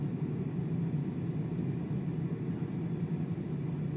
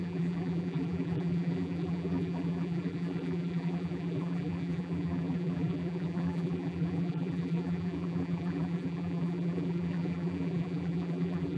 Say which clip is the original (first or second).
first